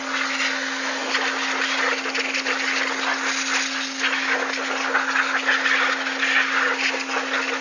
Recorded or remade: recorded